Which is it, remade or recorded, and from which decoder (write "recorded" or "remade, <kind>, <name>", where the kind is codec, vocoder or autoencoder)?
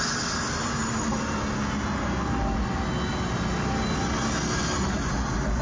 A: recorded